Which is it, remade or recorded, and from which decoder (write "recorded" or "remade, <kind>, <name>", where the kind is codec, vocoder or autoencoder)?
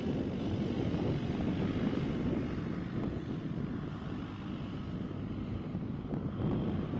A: recorded